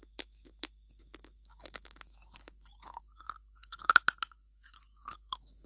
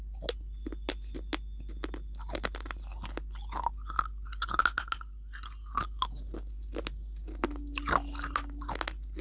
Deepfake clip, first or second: first